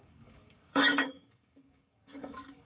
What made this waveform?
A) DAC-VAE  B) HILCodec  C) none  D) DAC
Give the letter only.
D